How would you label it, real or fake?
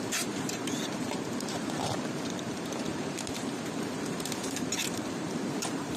fake